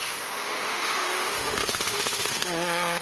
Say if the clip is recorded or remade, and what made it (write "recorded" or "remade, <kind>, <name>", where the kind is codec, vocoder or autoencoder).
remade, autoencoder, DAC-VAE